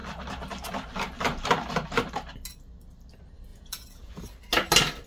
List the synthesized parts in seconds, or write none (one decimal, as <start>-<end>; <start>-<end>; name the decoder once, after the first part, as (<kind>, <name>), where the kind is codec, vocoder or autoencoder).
3.5-4.1 (vocoder, Vocos)